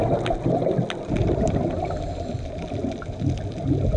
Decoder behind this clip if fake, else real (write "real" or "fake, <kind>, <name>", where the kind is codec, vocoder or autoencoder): real